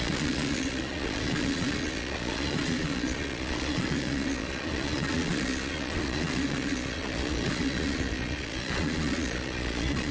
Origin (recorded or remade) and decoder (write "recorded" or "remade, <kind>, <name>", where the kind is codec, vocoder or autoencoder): remade, vocoder, Vocos